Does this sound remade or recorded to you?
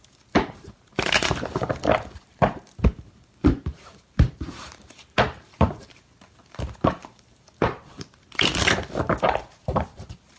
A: remade